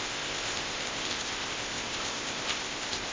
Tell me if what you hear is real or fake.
fake